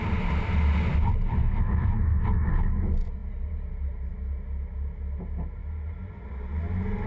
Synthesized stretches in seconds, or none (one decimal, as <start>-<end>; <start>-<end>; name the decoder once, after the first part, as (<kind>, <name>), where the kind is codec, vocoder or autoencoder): 1.4-2.5 (autoencoder, DAC-VAE)